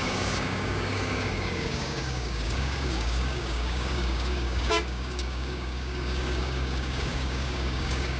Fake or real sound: fake